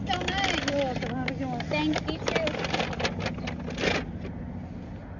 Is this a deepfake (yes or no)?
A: no